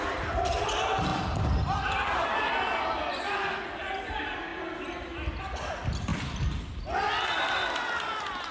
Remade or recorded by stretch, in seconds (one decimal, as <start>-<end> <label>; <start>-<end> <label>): 0.0-4.5 remade; 4.5-5.4 recorded; 5.4-8.5 remade